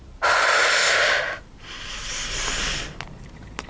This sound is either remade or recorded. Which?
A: recorded